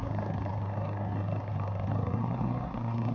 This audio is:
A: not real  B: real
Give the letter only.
A